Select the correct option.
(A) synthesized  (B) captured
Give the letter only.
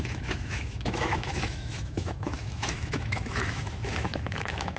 A